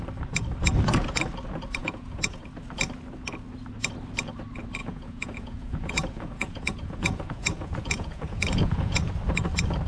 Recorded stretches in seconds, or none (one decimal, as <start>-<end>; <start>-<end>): 0.0-1.8; 2.4-4.8; 9.1-9.9